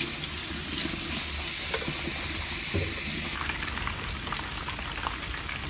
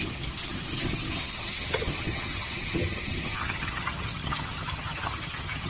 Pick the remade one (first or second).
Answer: second